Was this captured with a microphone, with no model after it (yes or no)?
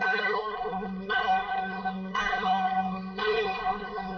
no